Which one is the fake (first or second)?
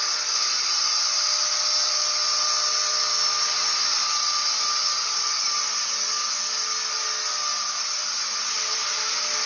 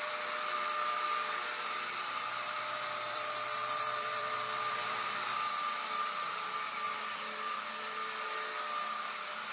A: second